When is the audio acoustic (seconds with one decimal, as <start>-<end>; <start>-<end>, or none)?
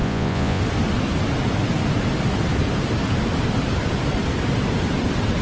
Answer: 0.6-5.4